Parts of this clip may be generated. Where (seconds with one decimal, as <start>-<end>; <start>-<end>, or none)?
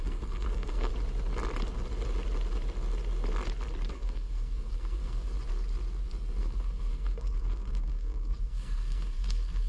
0.0-0.9; 3.9-5.3; 6.4-9.7